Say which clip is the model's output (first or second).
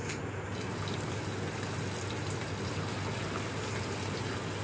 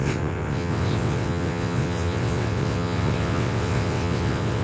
second